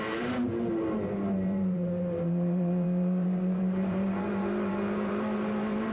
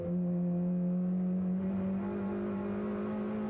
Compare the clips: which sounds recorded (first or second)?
second